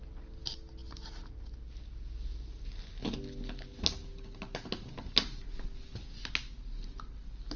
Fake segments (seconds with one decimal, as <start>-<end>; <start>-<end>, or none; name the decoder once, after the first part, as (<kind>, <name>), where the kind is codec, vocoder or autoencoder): none